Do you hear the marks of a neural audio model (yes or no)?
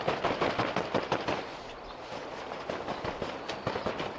no